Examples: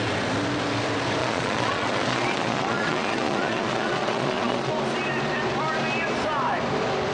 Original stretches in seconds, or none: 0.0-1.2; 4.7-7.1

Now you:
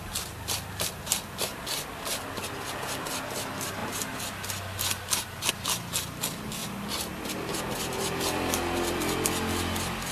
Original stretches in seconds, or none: 0.0-10.1